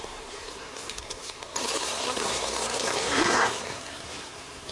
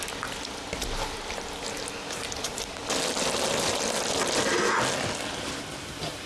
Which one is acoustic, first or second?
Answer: second